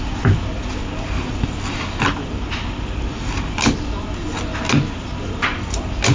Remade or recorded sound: recorded